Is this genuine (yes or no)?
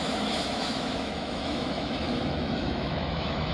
no